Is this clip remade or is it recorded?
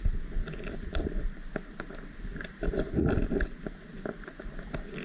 recorded